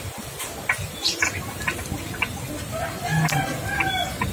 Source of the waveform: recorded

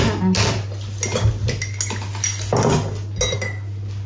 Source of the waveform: recorded